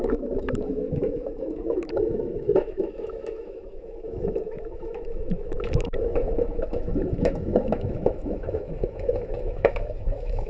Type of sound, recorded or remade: remade